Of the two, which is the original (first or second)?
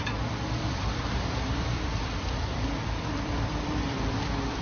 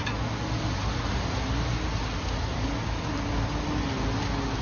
second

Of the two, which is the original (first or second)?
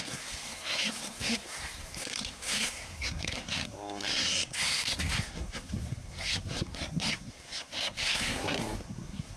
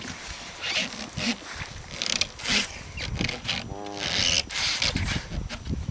second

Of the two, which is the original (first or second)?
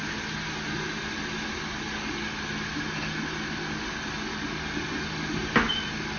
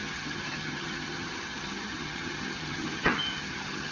first